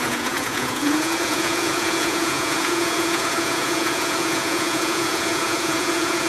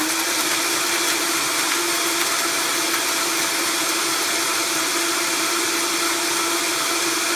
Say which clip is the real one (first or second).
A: second